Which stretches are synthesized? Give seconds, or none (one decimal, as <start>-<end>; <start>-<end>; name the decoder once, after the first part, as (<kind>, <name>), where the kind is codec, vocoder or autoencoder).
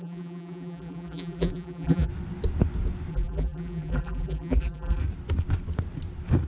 0.0-2.1 (vocoder, BigVGAN v2); 3.1-5.0